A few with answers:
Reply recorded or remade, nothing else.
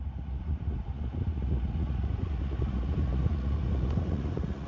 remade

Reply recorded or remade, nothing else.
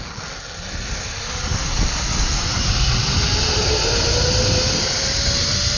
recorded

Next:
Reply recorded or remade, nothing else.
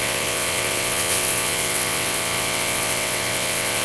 remade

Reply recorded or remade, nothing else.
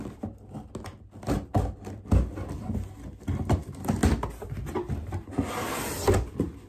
recorded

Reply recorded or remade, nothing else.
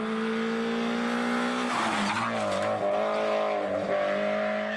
recorded